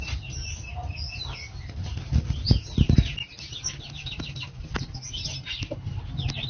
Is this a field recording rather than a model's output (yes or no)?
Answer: yes